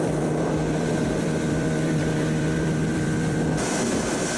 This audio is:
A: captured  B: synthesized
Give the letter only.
B